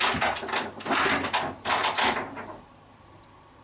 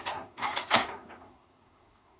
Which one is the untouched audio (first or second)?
first